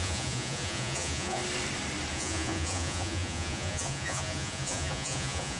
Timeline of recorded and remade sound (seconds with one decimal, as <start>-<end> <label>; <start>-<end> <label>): 0.0-1.4 remade; 1.4-2.1 recorded; 2.1-5.6 remade